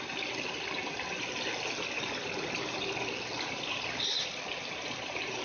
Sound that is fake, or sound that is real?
real